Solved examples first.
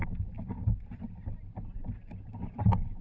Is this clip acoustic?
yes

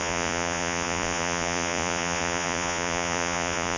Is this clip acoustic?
no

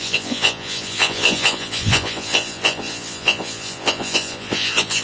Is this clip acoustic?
no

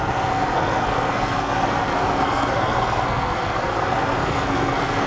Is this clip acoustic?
no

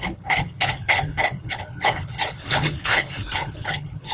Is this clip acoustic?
no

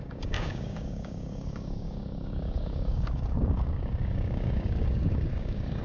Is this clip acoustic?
no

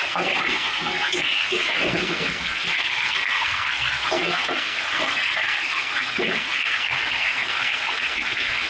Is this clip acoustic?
no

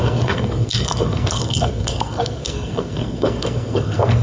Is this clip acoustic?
no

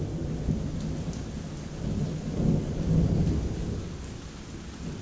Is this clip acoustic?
yes